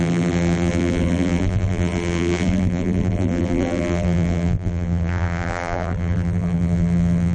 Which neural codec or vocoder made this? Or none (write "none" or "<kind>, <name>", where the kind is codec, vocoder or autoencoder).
vocoder, BigVGAN v2